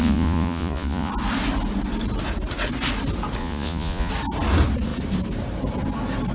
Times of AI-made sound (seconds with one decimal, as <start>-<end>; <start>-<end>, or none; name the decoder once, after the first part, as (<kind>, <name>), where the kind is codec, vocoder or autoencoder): 0.0-1.1 (vocoder, Vocos); 3.4-4.1